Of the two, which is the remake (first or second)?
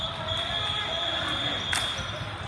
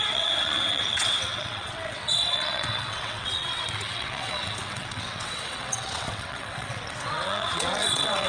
second